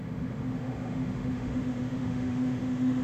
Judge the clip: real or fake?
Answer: fake